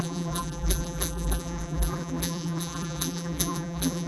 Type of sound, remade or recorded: remade